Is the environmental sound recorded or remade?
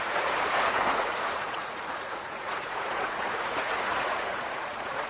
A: remade